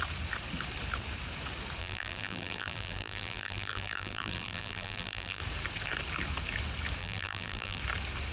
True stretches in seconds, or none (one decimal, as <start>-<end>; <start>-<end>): 0.0-1.8; 5.4-7.0; 7.8-8.3